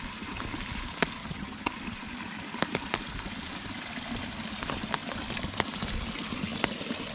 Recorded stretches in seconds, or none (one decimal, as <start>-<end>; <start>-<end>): 0.0-1.2; 1.7-7.1